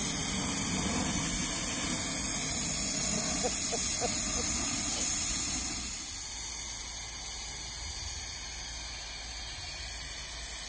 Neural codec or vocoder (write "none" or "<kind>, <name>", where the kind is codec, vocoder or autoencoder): none